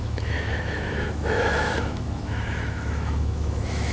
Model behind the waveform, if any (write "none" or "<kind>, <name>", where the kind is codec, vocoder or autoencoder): autoencoder, DAC-VAE